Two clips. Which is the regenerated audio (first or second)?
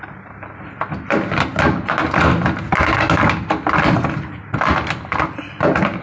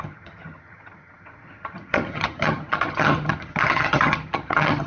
second